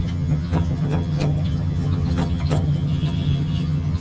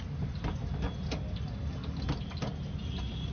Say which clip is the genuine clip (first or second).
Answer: second